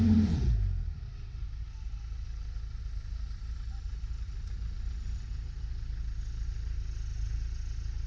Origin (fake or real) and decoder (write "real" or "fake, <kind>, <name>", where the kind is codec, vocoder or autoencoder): real